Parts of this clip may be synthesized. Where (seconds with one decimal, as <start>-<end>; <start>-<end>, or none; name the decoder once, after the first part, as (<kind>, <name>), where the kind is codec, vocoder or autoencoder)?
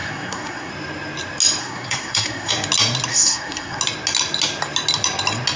0.0-0.7 (codec, SNAC); 1.6-2.5; 3.1-3.8